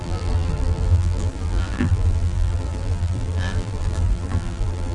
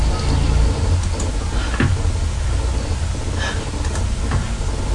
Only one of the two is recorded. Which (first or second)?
second